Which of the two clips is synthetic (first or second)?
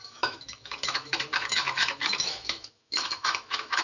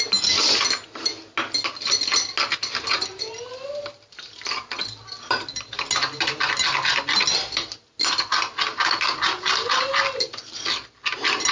first